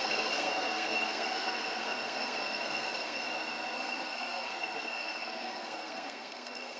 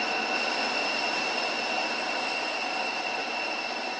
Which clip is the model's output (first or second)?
first